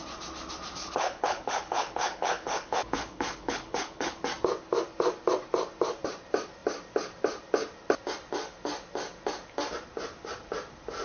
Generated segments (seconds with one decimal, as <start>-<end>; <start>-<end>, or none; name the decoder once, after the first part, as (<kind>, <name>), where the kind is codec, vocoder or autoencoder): 0.8-4.2 (codec, HILCodec)